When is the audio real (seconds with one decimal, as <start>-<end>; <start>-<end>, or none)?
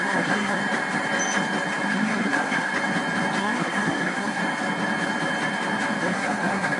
0.6-1.9; 2.7-3.4; 4.4-6.0